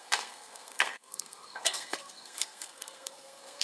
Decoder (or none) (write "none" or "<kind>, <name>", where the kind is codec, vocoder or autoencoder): codec, SNAC